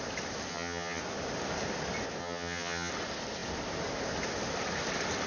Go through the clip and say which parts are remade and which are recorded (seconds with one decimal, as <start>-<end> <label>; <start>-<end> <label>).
0.0-0.5 recorded; 0.5-1.0 remade; 1.0-2.2 recorded; 2.2-2.9 remade; 2.9-5.3 recorded